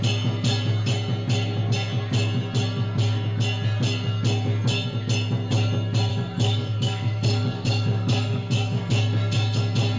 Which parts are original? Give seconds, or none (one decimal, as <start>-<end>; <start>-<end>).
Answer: 0.0-6.1; 8.9-10.0